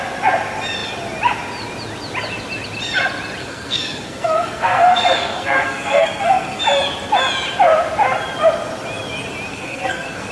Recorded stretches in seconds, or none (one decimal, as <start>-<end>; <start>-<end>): 0.0-3.4; 6.6-9.5